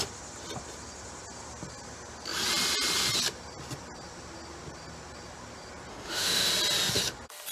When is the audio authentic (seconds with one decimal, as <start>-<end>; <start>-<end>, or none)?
0.0-5.9; 6.5-7.5